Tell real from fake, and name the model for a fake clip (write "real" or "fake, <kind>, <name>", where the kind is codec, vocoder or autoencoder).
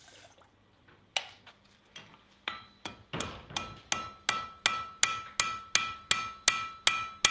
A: real